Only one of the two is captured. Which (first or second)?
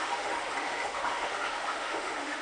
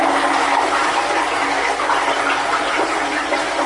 second